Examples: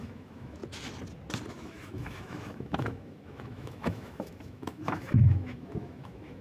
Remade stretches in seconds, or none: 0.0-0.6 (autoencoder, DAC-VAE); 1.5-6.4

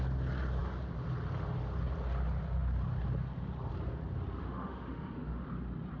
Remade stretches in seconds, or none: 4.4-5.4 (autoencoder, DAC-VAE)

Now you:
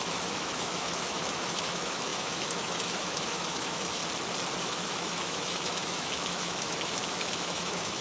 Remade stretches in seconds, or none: 0.0-4.0 (autoencoder, DAC-VAE); 4.6-8.0